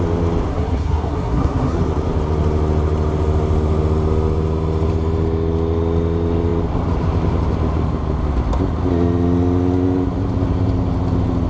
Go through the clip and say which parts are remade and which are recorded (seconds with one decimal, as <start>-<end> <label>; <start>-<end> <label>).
0.0-0.5 recorded; 0.5-1.8 remade; 1.8-11.5 recorded